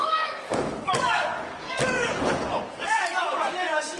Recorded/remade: remade